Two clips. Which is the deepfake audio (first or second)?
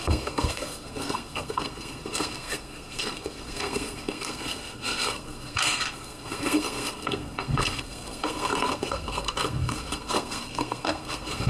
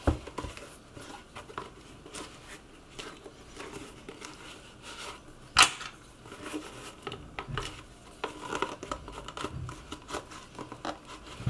first